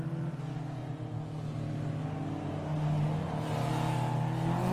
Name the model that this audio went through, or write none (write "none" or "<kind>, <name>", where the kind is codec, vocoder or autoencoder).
none